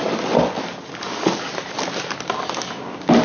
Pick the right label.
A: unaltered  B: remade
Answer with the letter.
A